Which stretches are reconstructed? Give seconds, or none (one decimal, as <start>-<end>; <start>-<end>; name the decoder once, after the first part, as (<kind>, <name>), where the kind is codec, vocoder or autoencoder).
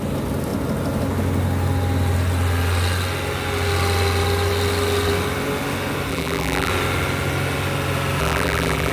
6.1-6.7 (vocoder, BigVGAN v2); 8.2-8.9